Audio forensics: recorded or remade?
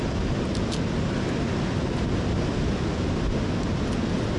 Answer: recorded